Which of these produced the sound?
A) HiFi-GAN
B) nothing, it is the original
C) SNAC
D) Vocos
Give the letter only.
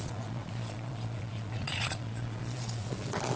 D